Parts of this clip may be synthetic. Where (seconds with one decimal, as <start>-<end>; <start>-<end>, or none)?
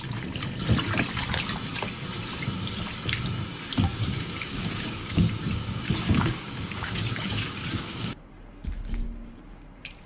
3.9-8.3